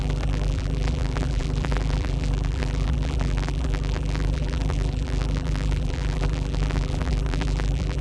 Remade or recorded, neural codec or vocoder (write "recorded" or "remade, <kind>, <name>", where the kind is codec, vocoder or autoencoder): remade, vocoder, BigVGAN v2